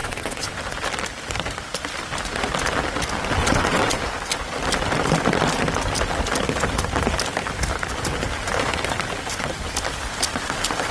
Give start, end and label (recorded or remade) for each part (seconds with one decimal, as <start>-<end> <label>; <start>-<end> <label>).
0.0-0.6 remade; 0.6-3.4 recorded; 3.4-4.0 remade; 4.0-10.9 recorded